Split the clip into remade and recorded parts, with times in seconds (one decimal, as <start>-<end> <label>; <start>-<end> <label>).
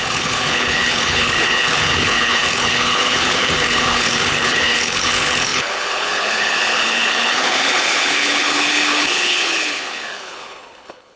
0.0-11.2 remade